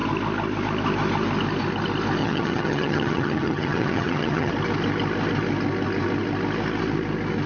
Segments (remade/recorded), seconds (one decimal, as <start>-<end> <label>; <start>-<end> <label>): 0.0-2.2 recorded; 2.2-4.5 remade; 4.5-7.5 recorded